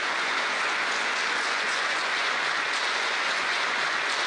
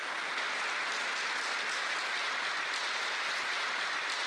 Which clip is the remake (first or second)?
first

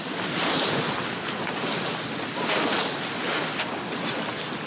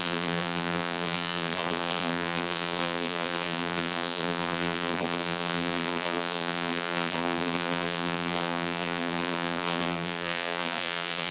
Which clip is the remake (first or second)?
second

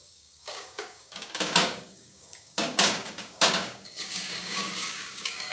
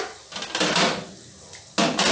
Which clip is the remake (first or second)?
first